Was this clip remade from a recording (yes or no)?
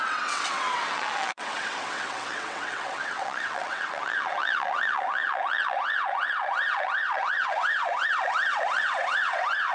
yes